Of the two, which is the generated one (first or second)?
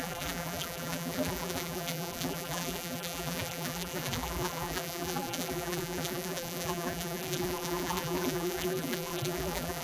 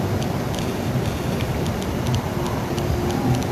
first